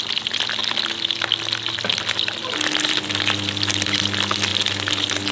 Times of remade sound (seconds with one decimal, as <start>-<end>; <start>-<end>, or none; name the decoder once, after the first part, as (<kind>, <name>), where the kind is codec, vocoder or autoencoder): none